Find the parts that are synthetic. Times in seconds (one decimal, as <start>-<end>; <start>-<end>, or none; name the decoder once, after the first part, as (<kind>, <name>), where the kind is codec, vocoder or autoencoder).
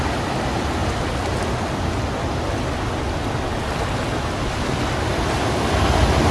none